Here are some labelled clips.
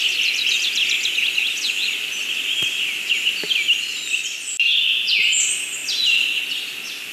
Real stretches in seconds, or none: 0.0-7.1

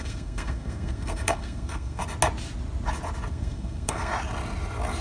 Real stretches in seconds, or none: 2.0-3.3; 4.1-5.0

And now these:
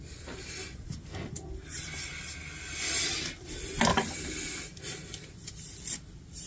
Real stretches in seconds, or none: 0.0-6.5

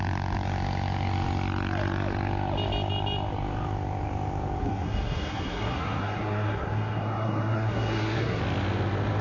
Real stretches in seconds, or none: 0.0-4.6; 8.4-9.2

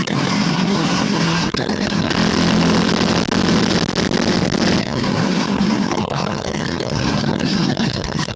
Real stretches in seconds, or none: 2.1-4.8